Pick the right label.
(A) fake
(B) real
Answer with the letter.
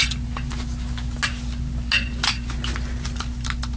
B